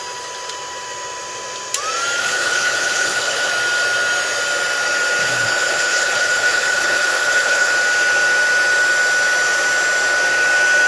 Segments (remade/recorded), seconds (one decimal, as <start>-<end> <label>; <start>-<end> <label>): 0.0-2.2 recorded; 2.2-3.5 remade; 3.5-5.2 recorded; 5.2-7.7 remade; 7.7-10.9 recorded